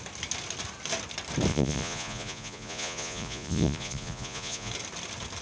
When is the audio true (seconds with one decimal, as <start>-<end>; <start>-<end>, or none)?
0.0-1.5; 4.7-5.4